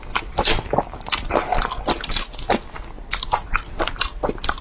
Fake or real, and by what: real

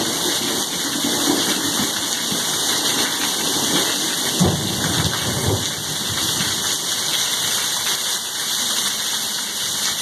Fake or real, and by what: real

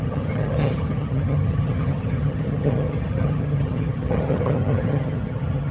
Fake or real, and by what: fake, vocoder, HiFi-GAN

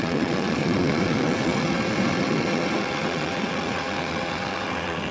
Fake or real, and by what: fake, vocoder, WaveNeXt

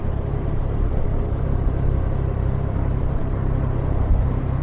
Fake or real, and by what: fake, vocoder, BigVGAN v2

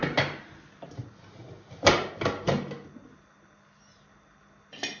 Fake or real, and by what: real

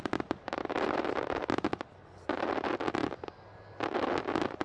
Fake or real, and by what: fake, vocoder, BigVGAN v2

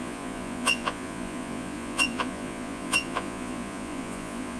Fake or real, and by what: fake, vocoder, Vocos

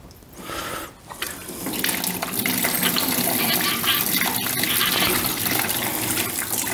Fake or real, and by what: real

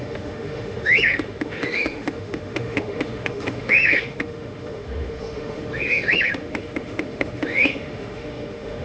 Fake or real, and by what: fake, autoencoder, DAC-VAE